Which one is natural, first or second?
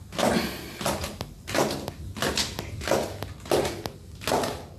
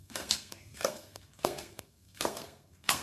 first